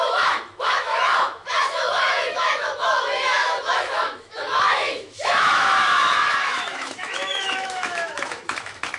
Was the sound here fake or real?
fake